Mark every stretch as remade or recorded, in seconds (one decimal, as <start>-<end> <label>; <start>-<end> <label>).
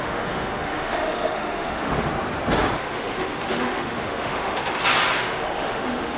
0.0-2.1 remade; 2.1-2.8 recorded; 2.8-4.8 remade; 4.8-5.5 recorded; 5.5-6.2 remade